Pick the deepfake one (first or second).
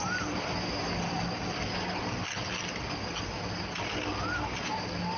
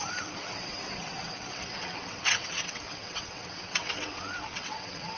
second